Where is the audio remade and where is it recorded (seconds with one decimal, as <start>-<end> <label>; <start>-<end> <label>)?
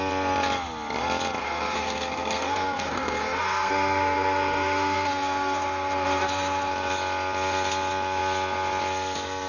0.0-1.4 recorded; 1.4-6.7 remade; 6.7-9.5 recorded